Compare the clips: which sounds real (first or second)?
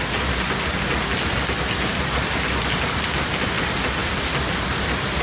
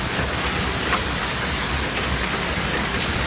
first